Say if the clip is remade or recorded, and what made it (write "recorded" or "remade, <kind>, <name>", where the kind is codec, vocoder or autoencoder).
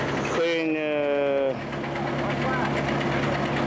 recorded